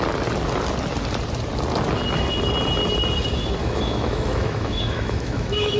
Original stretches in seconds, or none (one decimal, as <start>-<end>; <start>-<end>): 0.0-3.6